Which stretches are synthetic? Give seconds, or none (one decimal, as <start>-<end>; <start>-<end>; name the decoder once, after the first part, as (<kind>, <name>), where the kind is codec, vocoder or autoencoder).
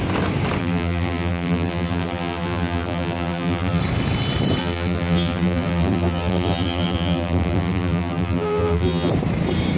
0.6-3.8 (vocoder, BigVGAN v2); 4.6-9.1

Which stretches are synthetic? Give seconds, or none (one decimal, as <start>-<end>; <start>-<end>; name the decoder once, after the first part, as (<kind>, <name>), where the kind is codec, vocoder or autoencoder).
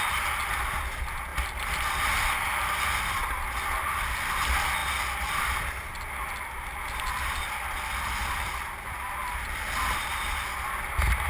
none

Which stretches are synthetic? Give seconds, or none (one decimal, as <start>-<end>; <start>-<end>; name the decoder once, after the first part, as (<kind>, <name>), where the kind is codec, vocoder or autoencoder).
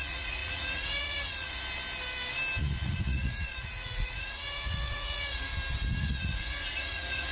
0.0-1.6 (vocoder, Vocos); 2.6-5.5; 6.0-7.3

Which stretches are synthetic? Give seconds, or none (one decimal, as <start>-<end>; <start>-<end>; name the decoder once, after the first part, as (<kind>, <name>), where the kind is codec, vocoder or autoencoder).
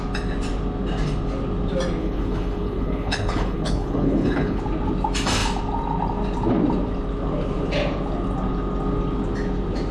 2.0-4.6 (codec, HILCodec)